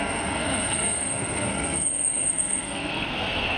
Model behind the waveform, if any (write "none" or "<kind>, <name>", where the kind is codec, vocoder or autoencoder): codec, SNAC